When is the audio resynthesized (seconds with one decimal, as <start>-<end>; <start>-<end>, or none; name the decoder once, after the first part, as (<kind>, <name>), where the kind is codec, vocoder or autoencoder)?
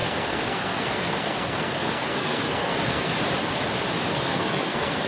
0.0-3.1 (codec, SNAC); 4.1-5.1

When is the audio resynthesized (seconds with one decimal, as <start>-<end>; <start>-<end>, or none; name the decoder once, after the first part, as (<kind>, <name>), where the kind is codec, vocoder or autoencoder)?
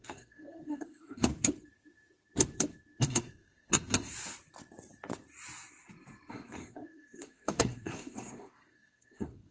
0.0-1.3 (codec, SNAC); 3.0-4.1; 6.3-9.5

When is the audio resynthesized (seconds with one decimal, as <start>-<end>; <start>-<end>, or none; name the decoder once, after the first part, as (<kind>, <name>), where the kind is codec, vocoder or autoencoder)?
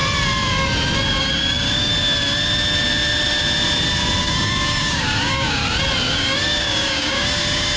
1.2-1.9 (codec, DAC); 4.2-5.6; 6.1-7.8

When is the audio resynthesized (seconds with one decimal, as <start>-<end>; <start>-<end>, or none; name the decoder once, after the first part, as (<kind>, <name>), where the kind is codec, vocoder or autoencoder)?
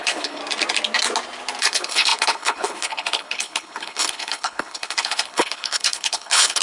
0.0-0.4 (codec, HILCodec); 1.6-6.6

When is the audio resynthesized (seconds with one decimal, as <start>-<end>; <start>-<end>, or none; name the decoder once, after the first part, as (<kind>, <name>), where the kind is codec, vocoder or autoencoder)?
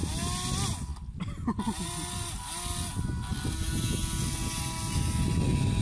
none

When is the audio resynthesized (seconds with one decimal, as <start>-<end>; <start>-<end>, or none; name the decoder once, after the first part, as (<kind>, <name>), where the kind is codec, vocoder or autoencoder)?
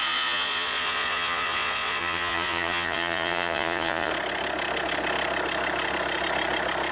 0.0-4.1 (vocoder, Vocos)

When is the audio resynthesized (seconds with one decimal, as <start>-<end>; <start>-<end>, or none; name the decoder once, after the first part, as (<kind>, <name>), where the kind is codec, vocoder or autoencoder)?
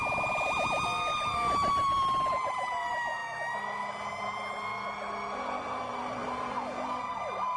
0.0-3.2 (vocoder, BigVGAN v2); 5.6-7.6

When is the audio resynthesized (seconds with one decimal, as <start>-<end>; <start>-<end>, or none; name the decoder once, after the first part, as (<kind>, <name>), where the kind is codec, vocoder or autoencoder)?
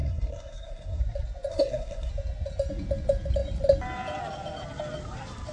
0.0-1.0 (codec, SNAC); 1.5-2.1